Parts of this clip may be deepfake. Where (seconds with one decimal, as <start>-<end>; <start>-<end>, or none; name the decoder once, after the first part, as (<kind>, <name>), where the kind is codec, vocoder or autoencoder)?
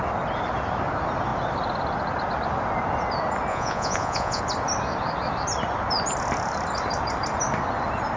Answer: 3.5-4.4 (vocoder, Vocos)